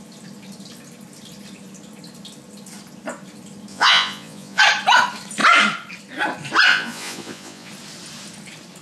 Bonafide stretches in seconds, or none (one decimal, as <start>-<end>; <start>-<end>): 0.0-3.7; 4.6-6.7; 7.7-8.8